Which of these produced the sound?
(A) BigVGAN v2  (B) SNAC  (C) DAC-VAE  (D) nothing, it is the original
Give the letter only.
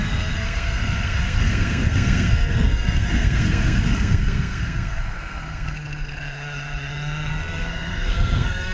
B